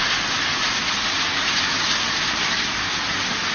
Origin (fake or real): real